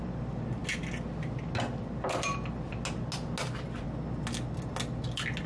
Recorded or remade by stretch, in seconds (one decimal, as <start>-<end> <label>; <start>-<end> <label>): 0.0-5.5 recorded